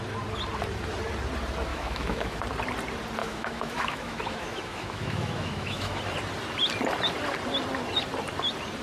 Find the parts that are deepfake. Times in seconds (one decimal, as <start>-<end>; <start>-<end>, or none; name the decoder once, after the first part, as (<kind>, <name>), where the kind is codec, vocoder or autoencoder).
1.7-2.4 (autoencoder, DAC-VAE); 3.2-6.0